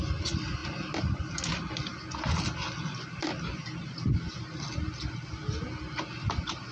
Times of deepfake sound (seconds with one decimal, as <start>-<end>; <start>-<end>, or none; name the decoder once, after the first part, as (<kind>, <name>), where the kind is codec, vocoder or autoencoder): none